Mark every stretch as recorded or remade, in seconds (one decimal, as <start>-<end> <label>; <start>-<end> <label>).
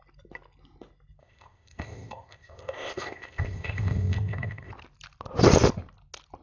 0.0-1.2 recorded; 1.2-4.7 remade; 4.7-6.4 recorded